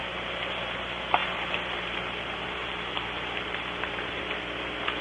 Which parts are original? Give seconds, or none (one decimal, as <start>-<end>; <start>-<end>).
none